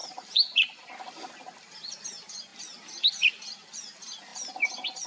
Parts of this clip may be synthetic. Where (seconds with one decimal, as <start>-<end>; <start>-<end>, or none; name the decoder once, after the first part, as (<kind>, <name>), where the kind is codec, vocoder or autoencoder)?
none